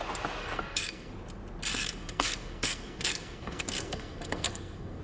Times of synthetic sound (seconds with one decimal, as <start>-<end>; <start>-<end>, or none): 0.4-1.1; 1.7-5.0